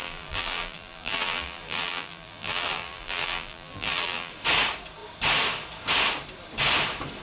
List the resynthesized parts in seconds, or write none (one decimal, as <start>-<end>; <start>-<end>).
0.0-4.3